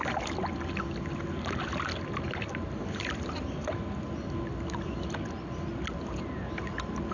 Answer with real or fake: real